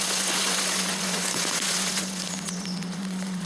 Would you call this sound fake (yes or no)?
yes